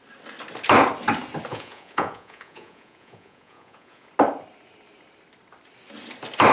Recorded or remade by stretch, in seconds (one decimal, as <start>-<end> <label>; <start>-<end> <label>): 0.0-1.5 recorded; 1.5-4.1 remade; 4.1-6.5 recorded